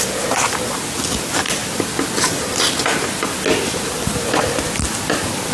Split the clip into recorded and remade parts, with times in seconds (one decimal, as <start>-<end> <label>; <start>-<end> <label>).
0.0-5.5 recorded